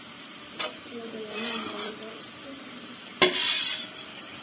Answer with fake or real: fake